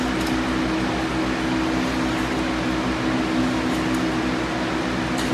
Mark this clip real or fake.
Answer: real